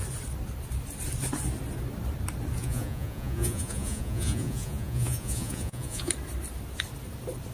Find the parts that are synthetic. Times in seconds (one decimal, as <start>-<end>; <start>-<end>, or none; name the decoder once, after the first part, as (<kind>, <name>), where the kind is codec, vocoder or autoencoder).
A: 2.6-6.1 (vocoder, Vocos)